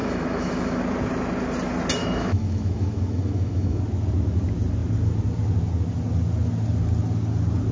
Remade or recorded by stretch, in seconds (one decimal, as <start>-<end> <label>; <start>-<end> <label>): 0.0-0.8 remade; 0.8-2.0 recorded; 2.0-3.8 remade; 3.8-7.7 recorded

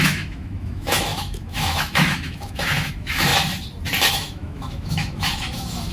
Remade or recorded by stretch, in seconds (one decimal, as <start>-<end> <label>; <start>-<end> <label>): 0.0-3.3 remade; 3.3-4.1 recorded; 4.1-5.9 remade

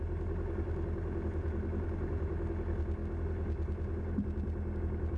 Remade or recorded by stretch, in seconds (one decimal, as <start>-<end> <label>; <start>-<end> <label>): 0.0-5.2 recorded

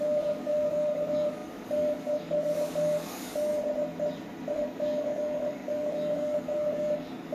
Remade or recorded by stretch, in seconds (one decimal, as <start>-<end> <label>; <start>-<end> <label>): 0.0-3.5 remade; 3.5-4.5 recorded; 4.5-7.3 remade